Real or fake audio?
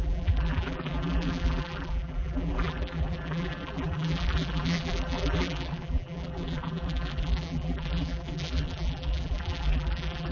fake